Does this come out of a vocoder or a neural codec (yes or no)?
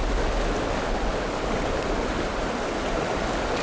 no